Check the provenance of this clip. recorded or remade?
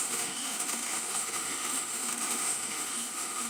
remade